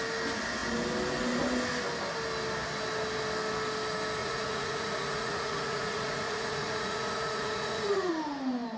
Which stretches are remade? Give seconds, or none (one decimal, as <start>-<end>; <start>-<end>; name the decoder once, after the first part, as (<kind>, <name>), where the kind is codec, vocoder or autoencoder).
4.2-8.1 (vocoder, Vocos)